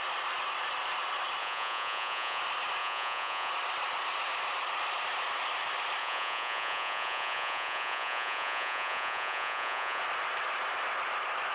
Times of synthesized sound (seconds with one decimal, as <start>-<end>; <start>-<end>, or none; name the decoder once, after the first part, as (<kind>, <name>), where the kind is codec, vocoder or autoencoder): 1.4-2.4 (vocoder, Vocos); 2.8-3.5; 6.0-10.0